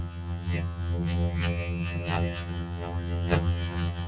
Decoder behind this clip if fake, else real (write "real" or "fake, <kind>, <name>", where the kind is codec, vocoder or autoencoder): fake, vocoder, HiFi-GAN